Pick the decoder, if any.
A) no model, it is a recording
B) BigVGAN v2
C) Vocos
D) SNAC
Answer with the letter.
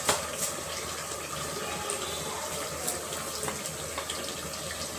A